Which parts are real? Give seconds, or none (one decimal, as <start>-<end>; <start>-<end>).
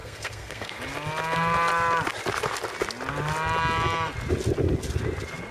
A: 0.8-5.5